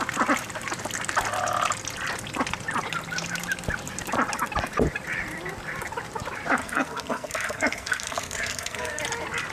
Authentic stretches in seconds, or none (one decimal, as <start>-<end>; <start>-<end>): 0.0-6.6; 9.0-9.5